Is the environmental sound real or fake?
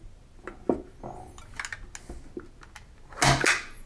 real